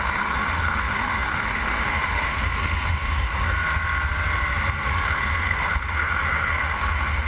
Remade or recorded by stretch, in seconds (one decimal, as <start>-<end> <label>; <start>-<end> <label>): 0.0-3.3 remade; 3.3-4.9 recorded; 4.9-7.3 remade